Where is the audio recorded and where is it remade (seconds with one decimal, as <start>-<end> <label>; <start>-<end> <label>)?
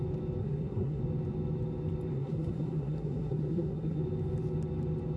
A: 0.0-0.4 recorded; 0.4-1.0 remade; 1.0-2.1 recorded; 2.1-4.0 remade; 4.0-5.2 recorded